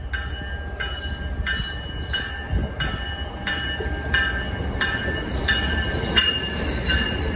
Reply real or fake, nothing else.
real